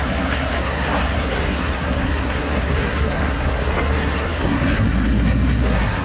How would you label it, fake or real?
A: fake